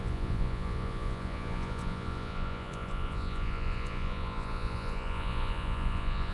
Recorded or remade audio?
remade